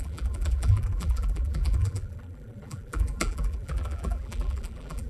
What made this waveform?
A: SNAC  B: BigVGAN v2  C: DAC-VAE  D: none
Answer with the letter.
B